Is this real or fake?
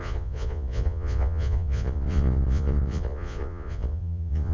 fake